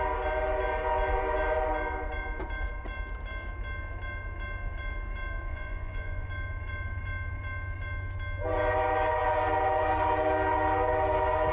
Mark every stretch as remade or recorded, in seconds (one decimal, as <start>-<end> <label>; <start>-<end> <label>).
0.0-5.5 recorded; 5.5-6.3 remade; 6.3-11.5 recorded